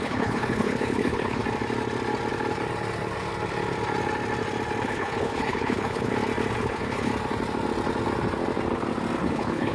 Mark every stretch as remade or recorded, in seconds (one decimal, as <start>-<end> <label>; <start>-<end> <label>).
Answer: 0.0-1.4 remade; 1.4-4.8 recorded; 4.8-6.1 remade; 6.1-6.6 recorded; 6.6-7.1 remade; 7.1-9.2 recorded; 9.2-9.7 remade